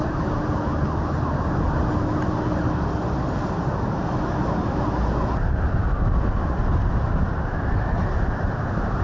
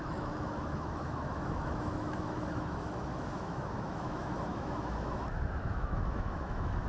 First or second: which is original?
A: first